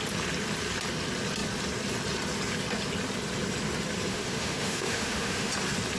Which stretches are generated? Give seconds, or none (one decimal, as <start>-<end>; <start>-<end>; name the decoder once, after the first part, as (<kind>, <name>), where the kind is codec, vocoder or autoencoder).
4.1-5.5 (autoencoder, DAC-VAE)

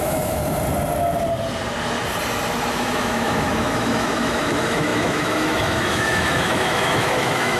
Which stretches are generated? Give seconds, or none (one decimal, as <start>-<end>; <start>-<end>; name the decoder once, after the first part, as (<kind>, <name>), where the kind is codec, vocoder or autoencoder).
0.0-0.4 (autoencoder, DAC-VAE); 2.7-7.6

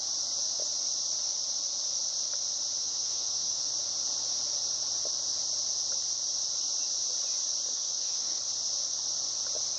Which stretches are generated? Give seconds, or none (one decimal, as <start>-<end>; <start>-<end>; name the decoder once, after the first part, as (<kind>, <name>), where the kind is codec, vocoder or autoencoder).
2.8-3.7 (autoencoder, DAC-VAE); 7.7-8.4

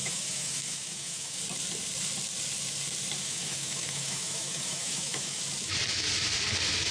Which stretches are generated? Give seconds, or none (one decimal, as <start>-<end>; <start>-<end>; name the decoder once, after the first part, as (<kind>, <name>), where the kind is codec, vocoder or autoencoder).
0.0-1.4 (autoencoder, DAC-VAE); 3.2-5.4